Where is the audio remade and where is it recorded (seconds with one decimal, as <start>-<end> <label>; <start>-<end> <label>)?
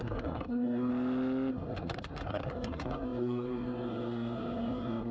0.0-0.9 remade; 0.9-1.5 recorded; 1.5-5.1 remade